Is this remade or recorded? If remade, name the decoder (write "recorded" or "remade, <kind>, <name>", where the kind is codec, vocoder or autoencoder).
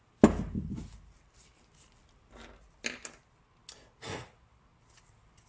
recorded